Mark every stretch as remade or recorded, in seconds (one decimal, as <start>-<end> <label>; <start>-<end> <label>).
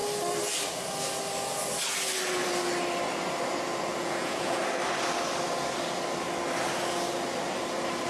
0.0-4.0 recorded; 4.0-4.6 remade; 4.6-8.1 recorded